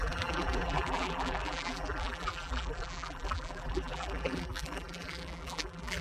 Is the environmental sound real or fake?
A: fake